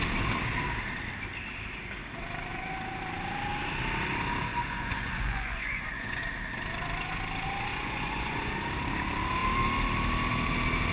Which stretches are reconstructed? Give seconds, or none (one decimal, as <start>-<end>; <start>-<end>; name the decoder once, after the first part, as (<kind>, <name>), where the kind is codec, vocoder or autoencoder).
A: 4.5-6.2 (vocoder, Vocos); 7.7-8.5